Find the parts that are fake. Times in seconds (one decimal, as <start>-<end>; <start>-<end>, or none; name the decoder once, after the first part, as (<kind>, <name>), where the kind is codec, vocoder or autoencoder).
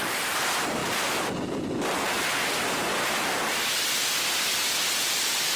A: none